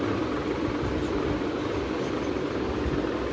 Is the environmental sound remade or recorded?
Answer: recorded